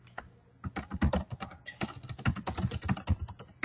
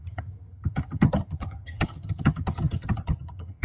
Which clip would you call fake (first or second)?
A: second